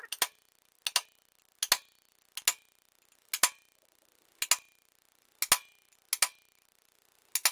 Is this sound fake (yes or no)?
no